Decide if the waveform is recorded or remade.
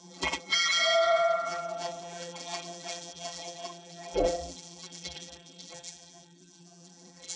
remade